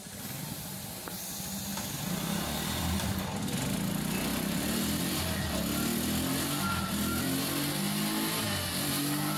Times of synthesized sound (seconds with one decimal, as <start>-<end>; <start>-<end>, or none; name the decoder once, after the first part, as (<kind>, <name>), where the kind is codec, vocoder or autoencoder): 4.3-5.0 (vocoder, BigVGAN v2)